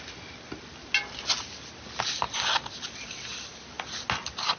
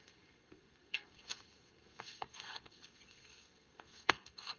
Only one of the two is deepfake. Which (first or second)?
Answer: second